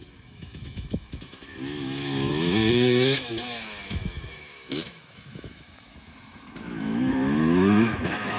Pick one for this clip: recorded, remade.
remade